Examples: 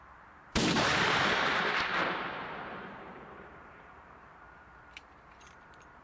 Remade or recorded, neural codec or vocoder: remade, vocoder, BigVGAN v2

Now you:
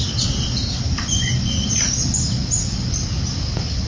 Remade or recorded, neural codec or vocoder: recorded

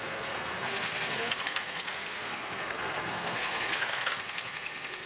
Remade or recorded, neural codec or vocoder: remade, codec, SNAC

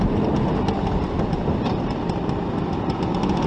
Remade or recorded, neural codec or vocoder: recorded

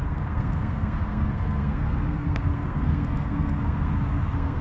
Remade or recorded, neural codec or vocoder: remade, codec, SNAC